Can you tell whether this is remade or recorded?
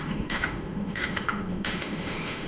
remade